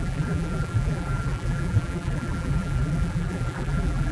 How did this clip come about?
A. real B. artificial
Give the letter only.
B